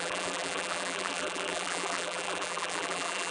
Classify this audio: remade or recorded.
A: remade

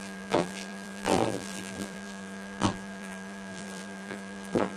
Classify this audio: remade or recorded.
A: remade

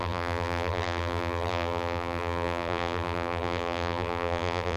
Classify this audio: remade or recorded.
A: remade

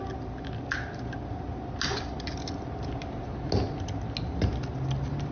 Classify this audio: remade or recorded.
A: recorded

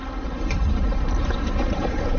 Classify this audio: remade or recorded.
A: remade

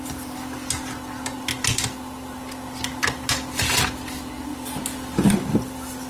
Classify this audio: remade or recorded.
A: recorded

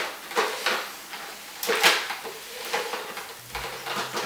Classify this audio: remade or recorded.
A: recorded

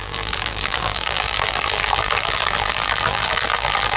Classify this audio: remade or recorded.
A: remade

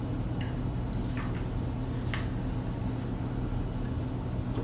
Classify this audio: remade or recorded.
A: recorded